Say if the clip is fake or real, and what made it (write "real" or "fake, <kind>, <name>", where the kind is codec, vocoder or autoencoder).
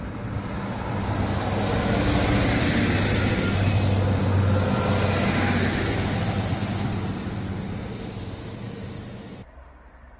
real